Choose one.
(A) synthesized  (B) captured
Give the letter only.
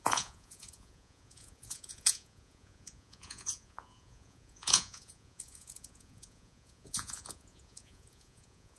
A